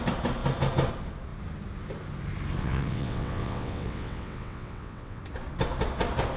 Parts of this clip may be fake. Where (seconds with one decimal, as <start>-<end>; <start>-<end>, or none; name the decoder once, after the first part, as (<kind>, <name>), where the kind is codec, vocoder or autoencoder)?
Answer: 2.6-5.2 (vocoder, WaveNeXt)

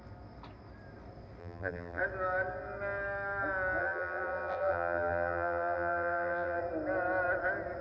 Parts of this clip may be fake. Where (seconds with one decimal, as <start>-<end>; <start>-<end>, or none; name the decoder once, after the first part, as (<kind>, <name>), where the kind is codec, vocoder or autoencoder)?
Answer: 1.4-2.0 (vocoder, BigVGAN v2); 3.8-6.6

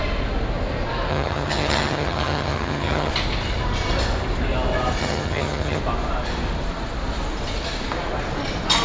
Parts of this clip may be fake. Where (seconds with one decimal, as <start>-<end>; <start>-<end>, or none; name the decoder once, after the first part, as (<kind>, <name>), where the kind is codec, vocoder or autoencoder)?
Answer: 1.1-3.1 (vocoder, HiFi-GAN); 5.0-5.8